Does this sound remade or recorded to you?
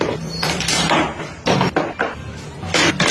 remade